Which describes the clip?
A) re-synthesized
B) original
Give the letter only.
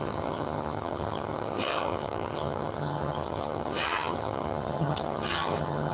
A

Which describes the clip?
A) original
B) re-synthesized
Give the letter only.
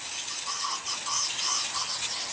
A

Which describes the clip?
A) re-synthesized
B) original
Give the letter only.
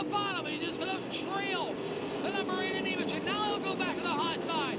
B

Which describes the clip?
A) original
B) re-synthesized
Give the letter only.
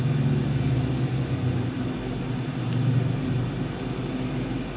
A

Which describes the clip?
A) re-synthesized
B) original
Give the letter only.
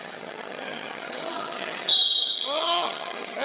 A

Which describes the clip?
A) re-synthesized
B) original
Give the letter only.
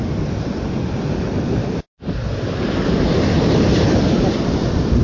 B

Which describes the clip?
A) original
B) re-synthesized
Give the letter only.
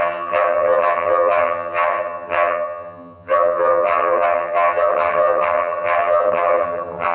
B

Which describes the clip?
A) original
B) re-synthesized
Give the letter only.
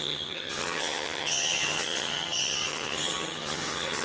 B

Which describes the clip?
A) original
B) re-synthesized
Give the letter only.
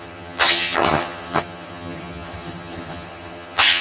B